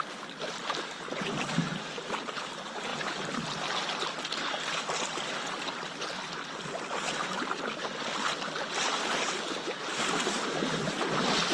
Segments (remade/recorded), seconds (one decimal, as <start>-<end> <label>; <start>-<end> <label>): 0.0-11.5 recorded